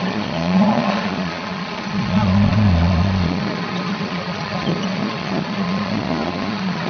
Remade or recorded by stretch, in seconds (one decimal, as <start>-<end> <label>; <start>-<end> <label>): 0.0-6.9 remade